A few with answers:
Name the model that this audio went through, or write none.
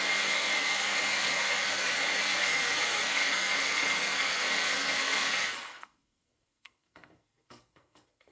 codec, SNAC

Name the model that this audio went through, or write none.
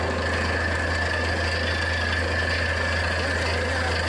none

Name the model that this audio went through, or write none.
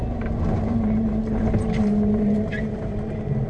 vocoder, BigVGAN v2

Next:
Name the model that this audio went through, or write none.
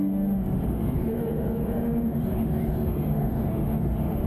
autoencoder, DAC-VAE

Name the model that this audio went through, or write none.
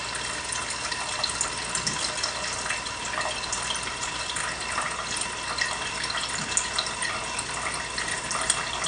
none